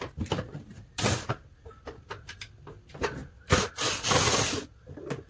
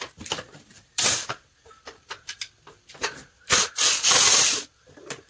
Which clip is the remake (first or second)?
second